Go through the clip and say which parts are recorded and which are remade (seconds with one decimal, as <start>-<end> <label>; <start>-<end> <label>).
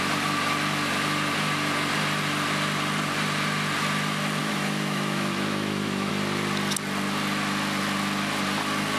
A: 0.0-4.4 recorded; 4.4-6.1 remade; 6.1-9.0 recorded